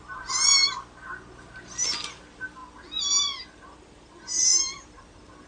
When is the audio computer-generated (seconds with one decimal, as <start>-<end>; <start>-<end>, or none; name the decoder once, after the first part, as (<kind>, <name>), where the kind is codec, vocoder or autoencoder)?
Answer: none